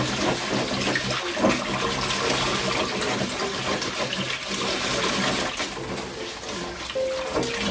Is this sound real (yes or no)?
yes